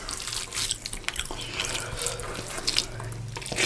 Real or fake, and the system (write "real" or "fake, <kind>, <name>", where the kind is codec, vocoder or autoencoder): real